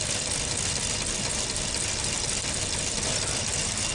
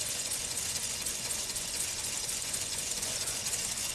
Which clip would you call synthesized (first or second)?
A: second